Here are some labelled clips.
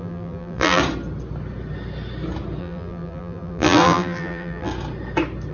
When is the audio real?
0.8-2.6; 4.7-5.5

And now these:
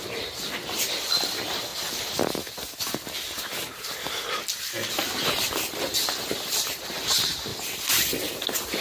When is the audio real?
0.0-8.8

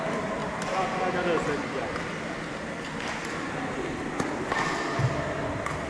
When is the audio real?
0.0-5.9